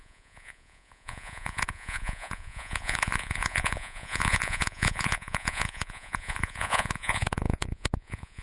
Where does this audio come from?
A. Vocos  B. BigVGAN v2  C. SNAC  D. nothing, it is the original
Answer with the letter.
A